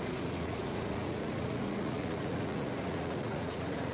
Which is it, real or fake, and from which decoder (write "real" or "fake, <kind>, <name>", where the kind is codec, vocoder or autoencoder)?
fake, vocoder, Vocos